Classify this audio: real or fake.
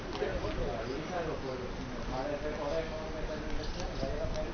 real